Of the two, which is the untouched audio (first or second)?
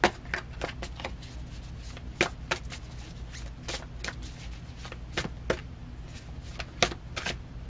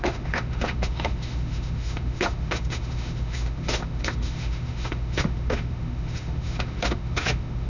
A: first